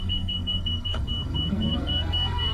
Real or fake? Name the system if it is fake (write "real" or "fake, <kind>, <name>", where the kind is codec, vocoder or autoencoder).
fake, codec, SNAC